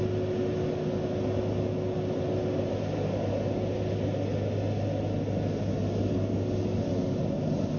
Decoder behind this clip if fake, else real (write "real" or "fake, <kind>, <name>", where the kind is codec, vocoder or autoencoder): real